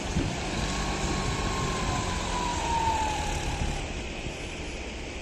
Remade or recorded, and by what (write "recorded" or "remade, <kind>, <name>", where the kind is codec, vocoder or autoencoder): remade, vocoder, BigVGAN v2